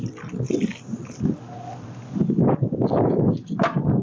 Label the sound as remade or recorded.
recorded